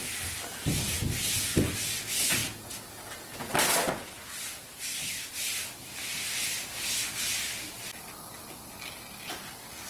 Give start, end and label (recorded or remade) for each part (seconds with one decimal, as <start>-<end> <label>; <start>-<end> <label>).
0.0-9.9 recorded